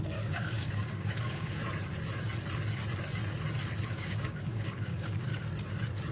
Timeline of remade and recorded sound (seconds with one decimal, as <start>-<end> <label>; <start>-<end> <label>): 0.0-1.6 remade; 1.6-3.9 recorded; 3.9-5.3 remade; 5.3-6.1 recorded